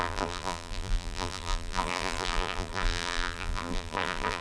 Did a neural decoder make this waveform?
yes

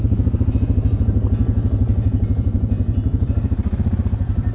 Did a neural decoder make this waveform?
yes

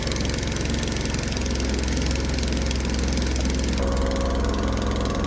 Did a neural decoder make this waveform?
no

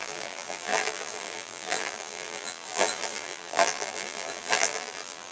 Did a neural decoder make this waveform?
yes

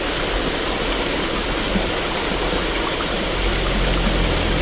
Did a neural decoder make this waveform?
no